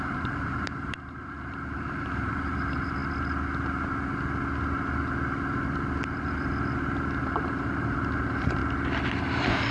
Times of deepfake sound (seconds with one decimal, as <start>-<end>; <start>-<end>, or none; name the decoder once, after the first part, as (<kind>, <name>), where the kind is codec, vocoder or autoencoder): 0.0-3.0 (vocoder, BigVGAN v2); 7.2-8.6; 9.2-9.7

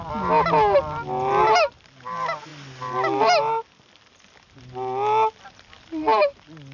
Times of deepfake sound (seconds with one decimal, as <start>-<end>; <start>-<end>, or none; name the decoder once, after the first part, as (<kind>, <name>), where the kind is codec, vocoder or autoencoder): none

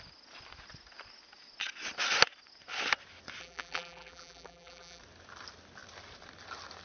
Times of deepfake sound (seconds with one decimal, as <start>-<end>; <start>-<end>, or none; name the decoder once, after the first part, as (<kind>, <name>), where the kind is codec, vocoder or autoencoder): 3.4-5.0 (vocoder, BigVGAN v2)

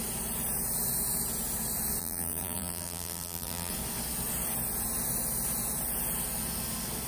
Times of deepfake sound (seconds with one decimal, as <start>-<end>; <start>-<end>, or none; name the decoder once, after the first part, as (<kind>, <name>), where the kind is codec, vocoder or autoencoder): 2.0-3.7 (vocoder, BigVGAN v2)

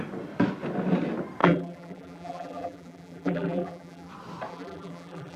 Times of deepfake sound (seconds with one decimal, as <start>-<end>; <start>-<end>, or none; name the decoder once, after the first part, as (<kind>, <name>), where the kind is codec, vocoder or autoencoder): 1.4-4.1 (vocoder, BigVGAN v2); 4.5-5.4

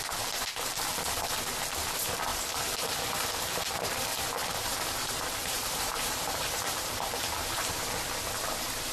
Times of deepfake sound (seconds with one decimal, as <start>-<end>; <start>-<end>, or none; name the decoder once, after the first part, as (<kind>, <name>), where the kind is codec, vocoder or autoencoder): 2.3-3.8 (vocoder, BigVGAN v2); 5.4-7.7

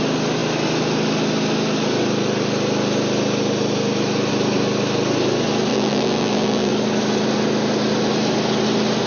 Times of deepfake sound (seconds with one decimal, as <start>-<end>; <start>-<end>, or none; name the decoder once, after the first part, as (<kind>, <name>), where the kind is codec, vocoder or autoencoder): 5.7-6.7 (vocoder, BigVGAN v2)

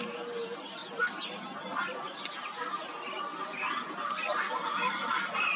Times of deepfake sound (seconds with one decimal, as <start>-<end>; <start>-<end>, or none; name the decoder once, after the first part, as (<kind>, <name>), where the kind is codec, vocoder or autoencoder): 3.3-5.6 (vocoder, BigVGAN v2)